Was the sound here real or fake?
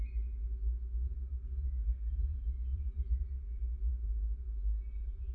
real